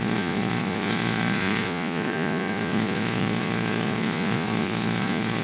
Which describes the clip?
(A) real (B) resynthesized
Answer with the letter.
B